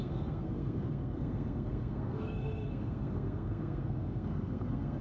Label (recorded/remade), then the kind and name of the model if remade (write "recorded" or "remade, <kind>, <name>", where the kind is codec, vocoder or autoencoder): remade, codec, SNAC